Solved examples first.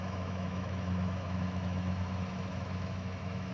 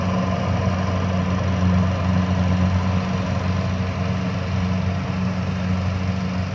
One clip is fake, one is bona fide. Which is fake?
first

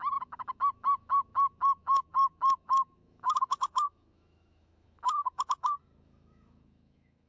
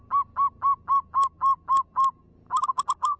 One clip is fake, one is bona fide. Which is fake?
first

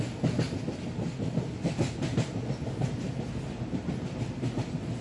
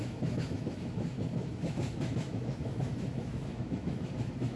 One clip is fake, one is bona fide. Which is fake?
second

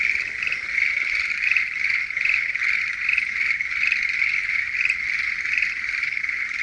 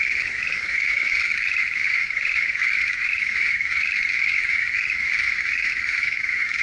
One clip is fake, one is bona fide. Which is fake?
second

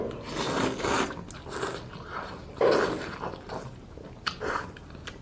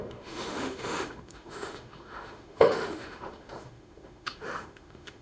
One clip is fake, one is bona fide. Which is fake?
second